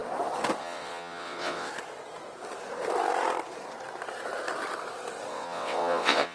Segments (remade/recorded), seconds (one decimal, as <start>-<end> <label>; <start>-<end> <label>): 0.0-0.6 recorded; 0.6-1.7 remade; 1.7-5.3 recorded; 5.3-6.3 remade